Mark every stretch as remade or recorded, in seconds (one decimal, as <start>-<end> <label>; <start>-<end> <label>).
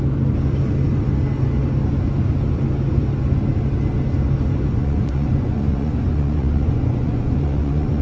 0.0-4.7 recorded; 4.7-8.0 remade